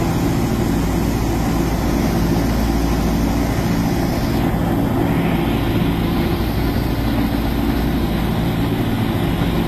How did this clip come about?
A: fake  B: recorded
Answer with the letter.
B